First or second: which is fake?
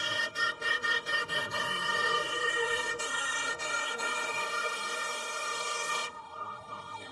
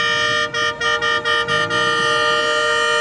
first